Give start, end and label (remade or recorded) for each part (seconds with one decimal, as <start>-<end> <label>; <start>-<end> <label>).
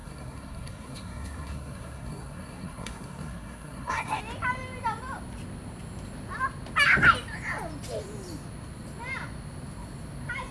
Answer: 0.0-4.2 remade; 4.2-10.5 recorded